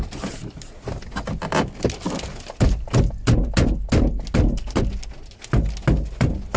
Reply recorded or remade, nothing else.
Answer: recorded